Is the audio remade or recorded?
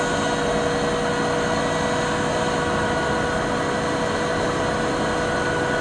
recorded